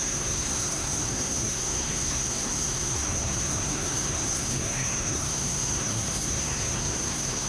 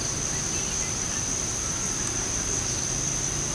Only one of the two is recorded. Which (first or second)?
second